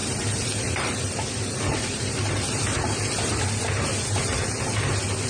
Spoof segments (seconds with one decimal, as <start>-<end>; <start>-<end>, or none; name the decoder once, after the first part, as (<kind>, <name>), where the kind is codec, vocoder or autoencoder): 0.0-3.9 (vocoder, BigVGAN v2); 4.8-5.3